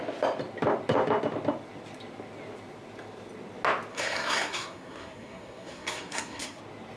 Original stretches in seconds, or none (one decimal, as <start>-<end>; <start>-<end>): 0.0-3.9; 6.6-7.0